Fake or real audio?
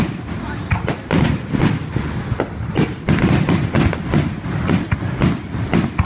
real